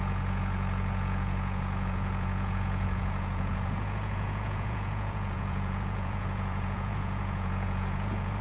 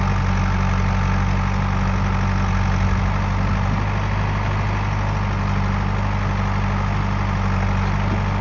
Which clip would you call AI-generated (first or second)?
first